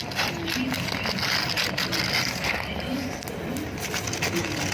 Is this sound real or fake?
real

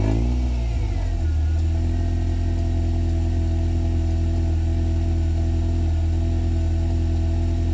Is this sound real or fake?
real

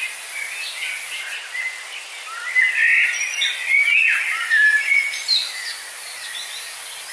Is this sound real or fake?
real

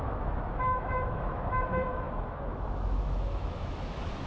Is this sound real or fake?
fake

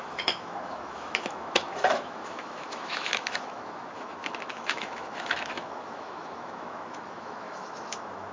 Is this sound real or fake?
fake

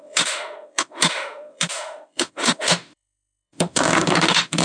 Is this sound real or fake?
fake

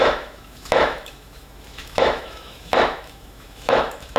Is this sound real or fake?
fake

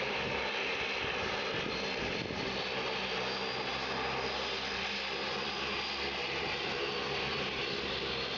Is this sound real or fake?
real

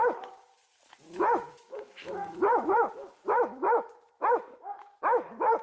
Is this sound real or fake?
fake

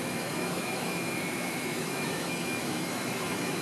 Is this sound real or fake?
fake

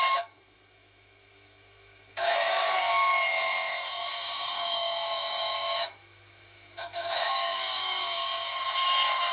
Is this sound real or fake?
fake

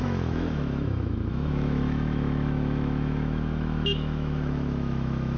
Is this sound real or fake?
fake